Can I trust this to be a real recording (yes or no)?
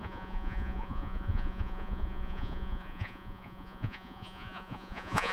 no